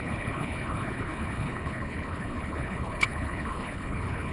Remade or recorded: remade